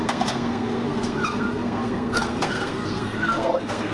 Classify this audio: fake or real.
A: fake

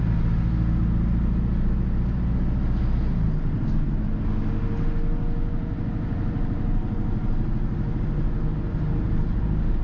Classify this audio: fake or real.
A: real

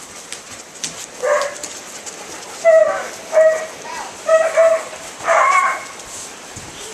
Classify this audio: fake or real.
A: real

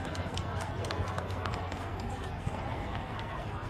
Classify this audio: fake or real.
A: fake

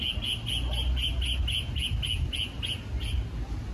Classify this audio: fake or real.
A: real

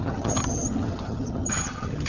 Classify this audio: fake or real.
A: fake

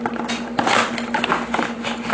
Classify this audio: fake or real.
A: real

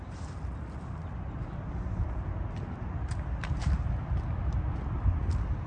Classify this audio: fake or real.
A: real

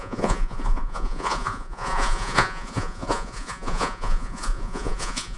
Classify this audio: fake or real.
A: fake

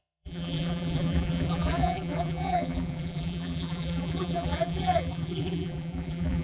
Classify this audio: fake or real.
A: fake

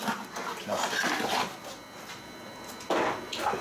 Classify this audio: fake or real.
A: real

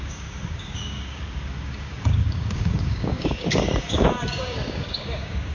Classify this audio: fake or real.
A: fake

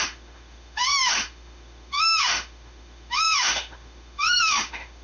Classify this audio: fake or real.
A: fake